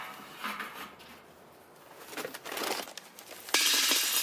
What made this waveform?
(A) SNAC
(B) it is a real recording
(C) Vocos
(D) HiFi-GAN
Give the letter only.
B